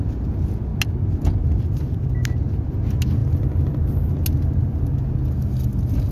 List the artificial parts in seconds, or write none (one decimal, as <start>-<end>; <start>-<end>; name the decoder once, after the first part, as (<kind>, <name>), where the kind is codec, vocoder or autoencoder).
none